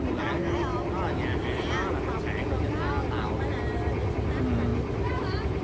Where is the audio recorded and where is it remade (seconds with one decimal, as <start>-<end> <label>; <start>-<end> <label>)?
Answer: 0.0-4.7 recorded; 4.7-5.6 remade